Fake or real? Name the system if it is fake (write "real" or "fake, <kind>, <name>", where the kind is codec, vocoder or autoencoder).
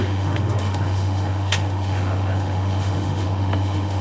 fake, autoencoder, DAC-VAE